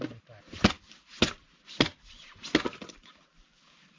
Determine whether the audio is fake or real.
real